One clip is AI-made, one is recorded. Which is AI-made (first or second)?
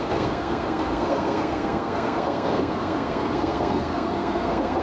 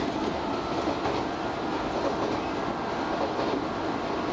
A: first